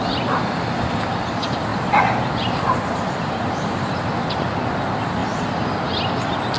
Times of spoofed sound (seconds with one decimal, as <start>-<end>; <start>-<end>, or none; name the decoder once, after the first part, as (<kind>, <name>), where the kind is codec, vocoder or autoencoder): 1.7-3.9 (vocoder, BigVGAN v2); 5.2-5.7